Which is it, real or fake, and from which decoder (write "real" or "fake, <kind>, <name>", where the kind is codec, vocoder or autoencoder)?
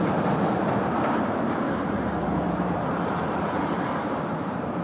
fake, vocoder, BigVGAN v2